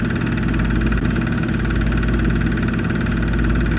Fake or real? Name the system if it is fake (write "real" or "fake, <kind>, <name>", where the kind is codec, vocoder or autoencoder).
real